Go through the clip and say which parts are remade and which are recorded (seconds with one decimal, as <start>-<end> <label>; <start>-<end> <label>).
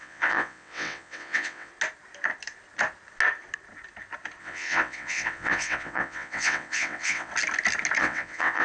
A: 0.0-1.7 remade; 1.7-4.4 recorded; 4.4-7.3 remade; 7.3-8.0 recorded; 8.0-8.6 remade